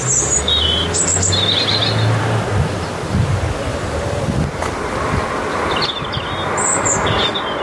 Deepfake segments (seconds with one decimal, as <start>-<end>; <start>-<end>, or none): 3.7-4.2